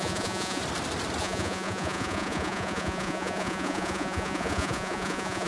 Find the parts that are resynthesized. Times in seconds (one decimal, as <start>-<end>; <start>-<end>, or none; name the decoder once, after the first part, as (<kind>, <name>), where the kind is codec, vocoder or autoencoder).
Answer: 0.0-0.6 (vocoder, Vocos); 1.2-5.5